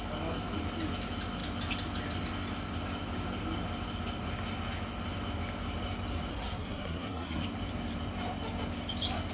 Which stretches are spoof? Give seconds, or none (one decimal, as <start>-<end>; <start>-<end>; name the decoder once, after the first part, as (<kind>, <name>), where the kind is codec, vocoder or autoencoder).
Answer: 6.3-7.4 (codec, SNAC)